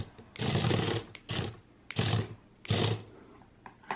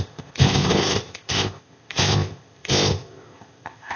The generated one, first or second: second